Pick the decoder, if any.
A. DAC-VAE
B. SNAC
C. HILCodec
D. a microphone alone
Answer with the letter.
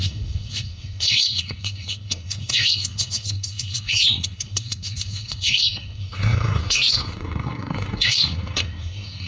B